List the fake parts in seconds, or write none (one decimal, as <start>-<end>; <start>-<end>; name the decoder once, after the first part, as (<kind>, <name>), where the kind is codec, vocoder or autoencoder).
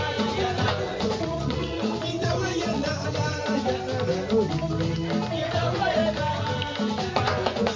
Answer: 0.0-3.7 (vocoder, Vocos); 5.4-6.0; 7.1-7.8